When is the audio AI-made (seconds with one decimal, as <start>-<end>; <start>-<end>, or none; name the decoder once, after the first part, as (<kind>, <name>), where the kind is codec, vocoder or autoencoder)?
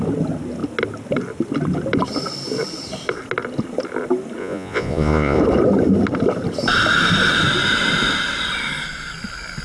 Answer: 4.4-5.4 (vocoder, Vocos)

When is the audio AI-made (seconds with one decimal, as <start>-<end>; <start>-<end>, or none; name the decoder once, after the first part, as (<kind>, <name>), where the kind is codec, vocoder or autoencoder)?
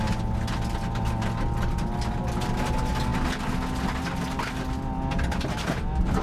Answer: none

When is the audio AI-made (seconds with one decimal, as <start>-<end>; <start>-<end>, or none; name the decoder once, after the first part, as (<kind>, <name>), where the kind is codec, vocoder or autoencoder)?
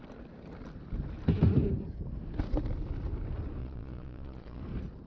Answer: 3.6-4.6 (vocoder, Vocos)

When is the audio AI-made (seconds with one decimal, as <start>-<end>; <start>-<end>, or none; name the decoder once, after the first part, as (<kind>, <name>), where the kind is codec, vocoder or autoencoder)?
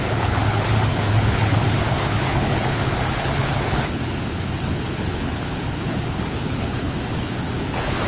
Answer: 0.0-8.1 (codec, HILCodec)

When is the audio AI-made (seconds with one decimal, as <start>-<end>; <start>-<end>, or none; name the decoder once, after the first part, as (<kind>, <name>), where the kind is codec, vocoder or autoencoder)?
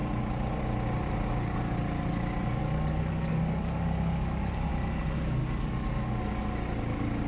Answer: 2.6-4.7 (codec, DAC); 5.4-6.2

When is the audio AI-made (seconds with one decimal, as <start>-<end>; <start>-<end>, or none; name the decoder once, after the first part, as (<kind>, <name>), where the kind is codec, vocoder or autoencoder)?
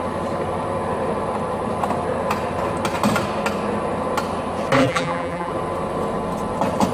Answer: 4.8-5.5 (vocoder, BigVGAN v2)